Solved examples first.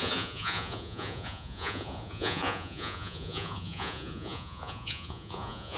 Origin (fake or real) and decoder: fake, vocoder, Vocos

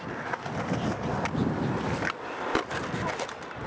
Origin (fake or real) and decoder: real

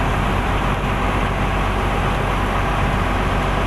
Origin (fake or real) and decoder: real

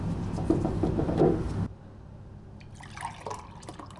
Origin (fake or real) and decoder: real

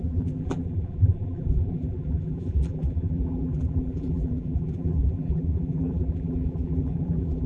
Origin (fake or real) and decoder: fake, vocoder, BigVGAN v2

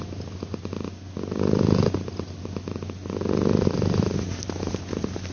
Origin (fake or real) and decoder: real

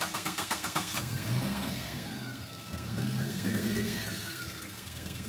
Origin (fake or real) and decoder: fake, codec, SNAC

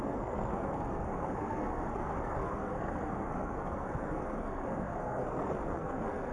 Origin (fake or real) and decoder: fake, codec, SNAC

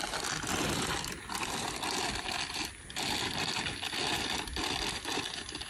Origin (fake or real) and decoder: real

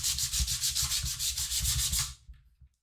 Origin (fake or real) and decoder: real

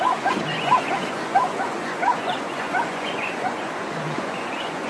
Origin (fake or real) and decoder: fake, vocoder, Vocos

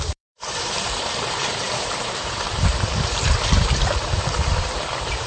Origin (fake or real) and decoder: fake, vocoder, BigVGAN v2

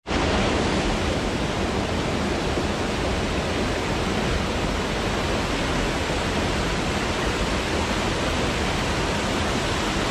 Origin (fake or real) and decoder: real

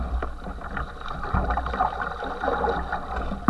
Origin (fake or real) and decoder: real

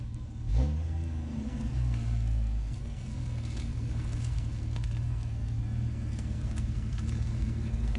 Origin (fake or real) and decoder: fake, codec, SNAC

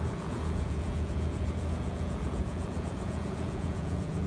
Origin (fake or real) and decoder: fake, vocoder, Vocos